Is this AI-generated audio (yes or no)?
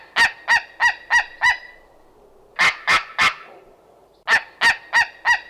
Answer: no